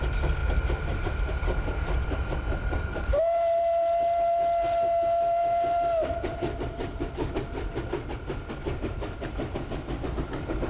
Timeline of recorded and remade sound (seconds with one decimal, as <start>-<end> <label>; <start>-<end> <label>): 0.0-10.7 recorded